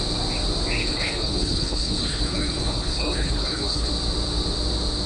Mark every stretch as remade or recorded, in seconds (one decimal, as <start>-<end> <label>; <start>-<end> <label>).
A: 0.0-0.8 recorded; 0.8-3.9 remade; 3.9-5.1 recorded